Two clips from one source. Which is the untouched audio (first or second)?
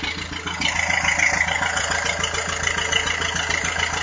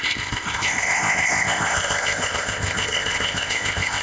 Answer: first